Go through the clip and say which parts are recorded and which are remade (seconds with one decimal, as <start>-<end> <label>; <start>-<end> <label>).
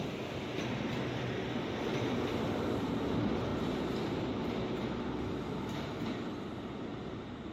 0.0-3.5 remade; 3.5-4.4 recorded; 4.4-7.5 remade